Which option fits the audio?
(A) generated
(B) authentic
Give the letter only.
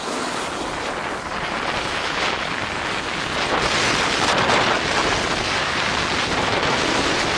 B